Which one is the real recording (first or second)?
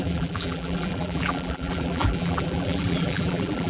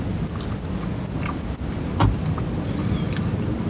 second